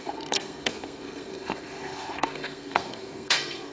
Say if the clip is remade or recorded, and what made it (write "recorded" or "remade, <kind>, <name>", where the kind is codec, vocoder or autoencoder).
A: remade, codec, SNAC